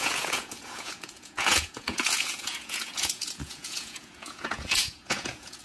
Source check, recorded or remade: remade